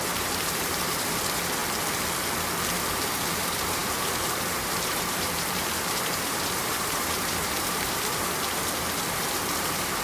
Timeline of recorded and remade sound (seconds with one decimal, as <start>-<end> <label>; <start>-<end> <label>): 0.0-1.6 remade; 1.6-2.9 recorded; 2.9-8.6 remade; 8.6-9.6 recorded; 9.6-10.0 remade